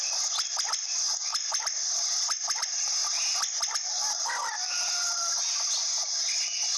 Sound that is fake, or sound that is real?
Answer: real